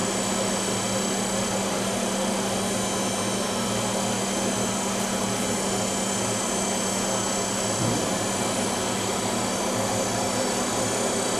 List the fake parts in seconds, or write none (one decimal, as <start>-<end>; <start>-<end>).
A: none